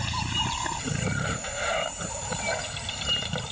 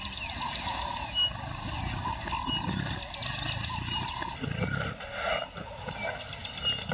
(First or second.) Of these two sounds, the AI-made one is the first